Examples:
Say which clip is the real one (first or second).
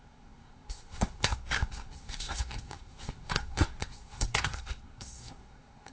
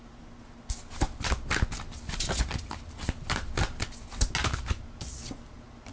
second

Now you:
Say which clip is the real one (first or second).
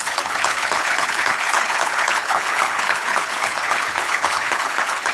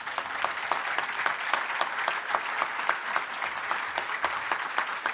second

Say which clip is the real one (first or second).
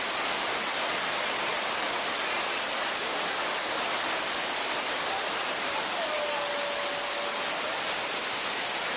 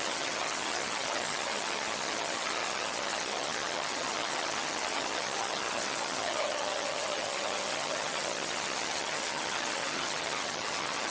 first